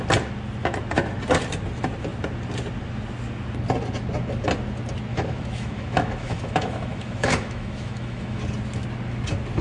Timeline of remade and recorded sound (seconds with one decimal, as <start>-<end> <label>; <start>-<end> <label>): 0.0-5.1 recorded; 5.1-8.4 remade; 8.4-9.6 recorded